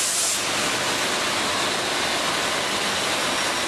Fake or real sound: real